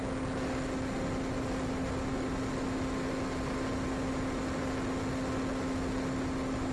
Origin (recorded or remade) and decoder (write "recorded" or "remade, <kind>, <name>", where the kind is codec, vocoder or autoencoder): recorded